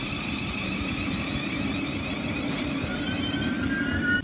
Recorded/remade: remade